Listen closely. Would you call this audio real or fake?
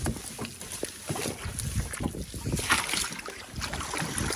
real